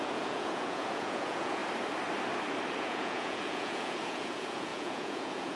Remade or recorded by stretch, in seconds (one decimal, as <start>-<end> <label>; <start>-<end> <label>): 0.0-1.6 remade; 1.6-2.8 recorded; 2.8-5.6 remade